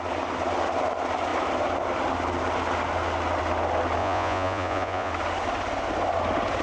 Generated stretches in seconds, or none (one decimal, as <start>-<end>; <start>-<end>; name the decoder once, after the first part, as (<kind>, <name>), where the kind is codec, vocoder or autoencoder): 4.0-5.1 (vocoder, Vocos)